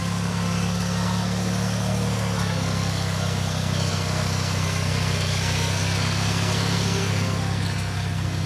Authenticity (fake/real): fake